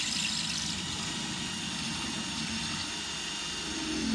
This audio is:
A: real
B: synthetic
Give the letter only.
A